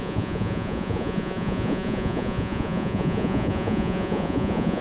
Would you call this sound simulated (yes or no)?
yes